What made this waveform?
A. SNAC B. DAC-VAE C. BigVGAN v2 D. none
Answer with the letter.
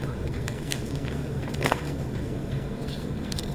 A